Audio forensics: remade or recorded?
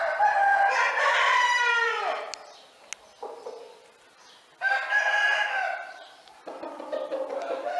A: recorded